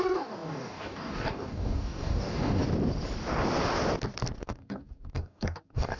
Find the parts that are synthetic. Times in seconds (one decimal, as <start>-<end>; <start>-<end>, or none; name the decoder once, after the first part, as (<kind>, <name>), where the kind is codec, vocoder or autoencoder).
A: 0.0-2.6 (codec, DAC); 4.4-6.0